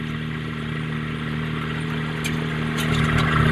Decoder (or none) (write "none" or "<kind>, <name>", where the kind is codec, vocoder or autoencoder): none